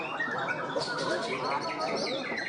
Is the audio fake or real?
real